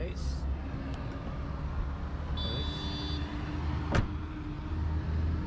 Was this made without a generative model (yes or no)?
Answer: yes